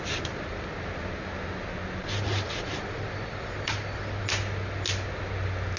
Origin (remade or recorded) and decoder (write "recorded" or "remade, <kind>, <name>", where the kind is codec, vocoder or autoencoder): recorded